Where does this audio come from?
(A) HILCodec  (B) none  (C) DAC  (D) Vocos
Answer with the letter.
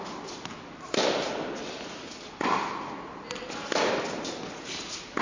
B